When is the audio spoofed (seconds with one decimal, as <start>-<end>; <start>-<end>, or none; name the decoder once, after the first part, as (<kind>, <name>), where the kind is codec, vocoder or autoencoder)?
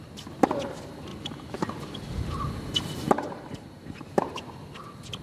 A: 1.1-4.2 (vocoder, BigVGAN v2)